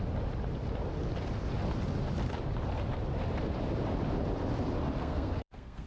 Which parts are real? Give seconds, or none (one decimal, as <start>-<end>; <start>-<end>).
0.0-5.0